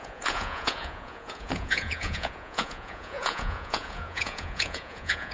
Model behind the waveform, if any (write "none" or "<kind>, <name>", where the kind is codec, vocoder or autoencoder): vocoder, Vocos